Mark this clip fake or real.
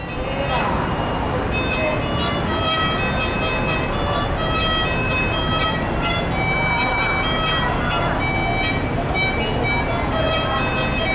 real